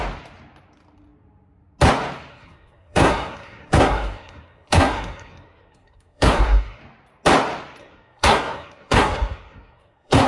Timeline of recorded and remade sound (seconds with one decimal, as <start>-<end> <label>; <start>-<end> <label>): 0.0-2.3 recorded; 2.3-6.8 remade; 6.8-7.8 recorded; 7.8-10.3 remade